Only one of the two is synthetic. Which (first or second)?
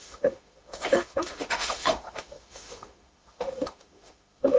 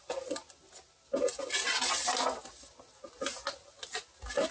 first